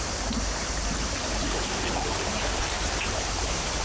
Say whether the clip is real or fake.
fake